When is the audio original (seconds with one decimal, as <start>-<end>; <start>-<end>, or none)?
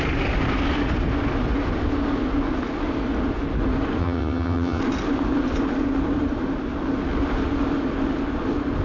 0.0-4.0; 4.8-8.8